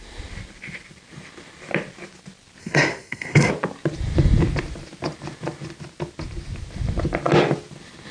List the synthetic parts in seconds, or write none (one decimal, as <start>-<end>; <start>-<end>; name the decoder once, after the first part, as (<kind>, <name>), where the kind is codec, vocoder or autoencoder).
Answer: 2.6-3.5 (codec, SNAC)